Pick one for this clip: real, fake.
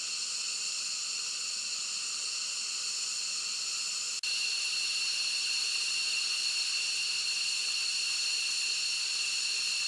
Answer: real